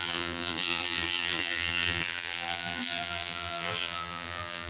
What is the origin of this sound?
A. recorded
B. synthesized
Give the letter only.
B